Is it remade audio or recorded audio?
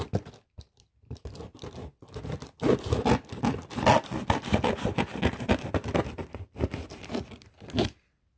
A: recorded